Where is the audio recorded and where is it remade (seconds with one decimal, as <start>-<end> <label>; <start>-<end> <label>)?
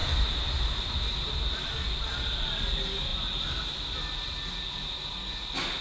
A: 0.0-5.8 recorded